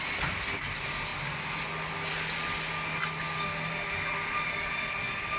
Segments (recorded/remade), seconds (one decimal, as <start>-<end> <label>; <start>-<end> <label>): 0.0-5.4 recorded